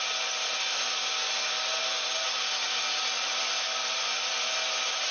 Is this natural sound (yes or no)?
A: yes